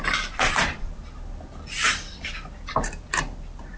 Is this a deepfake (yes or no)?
no